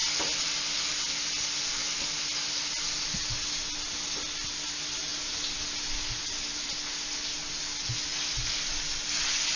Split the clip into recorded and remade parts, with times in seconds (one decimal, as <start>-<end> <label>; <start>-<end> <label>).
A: 0.0-9.6 recorded